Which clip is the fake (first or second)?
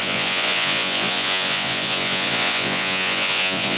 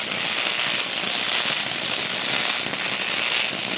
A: first